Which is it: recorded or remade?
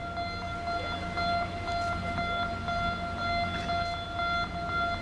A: recorded